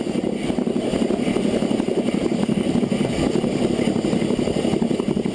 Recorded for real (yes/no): yes